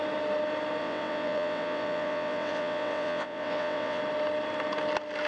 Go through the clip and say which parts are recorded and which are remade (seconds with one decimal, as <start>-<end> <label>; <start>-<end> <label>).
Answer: 0.0-0.8 recorded; 0.8-4.0 remade; 4.0-5.3 recorded